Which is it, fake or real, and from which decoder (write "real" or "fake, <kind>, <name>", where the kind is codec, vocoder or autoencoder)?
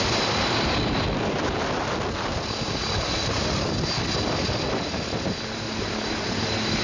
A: real